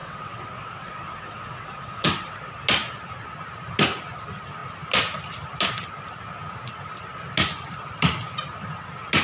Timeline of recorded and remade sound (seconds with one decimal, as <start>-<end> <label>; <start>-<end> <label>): 0.0-2.5 remade; 2.5-9.2 recorded